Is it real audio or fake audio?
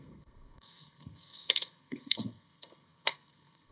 fake